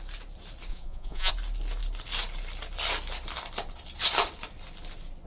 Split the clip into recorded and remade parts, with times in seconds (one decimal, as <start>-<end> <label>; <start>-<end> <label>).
0.0-0.7 recorded; 0.7-1.3 remade; 1.3-5.3 recorded

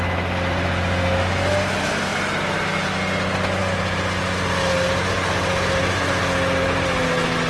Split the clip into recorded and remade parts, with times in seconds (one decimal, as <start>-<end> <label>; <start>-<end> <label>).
0.0-7.5 recorded

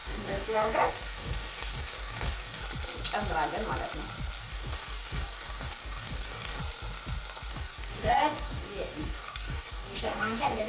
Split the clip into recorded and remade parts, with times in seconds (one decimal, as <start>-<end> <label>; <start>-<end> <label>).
0.0-2.6 remade; 2.6-4.4 recorded; 4.4-6.6 remade; 6.6-7.5 recorded; 7.5-10.7 remade

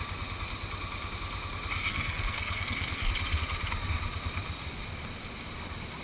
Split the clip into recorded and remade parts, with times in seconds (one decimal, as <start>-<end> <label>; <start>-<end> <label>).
0.0-1.9 recorded; 1.9-3.1 remade; 3.1-6.0 recorded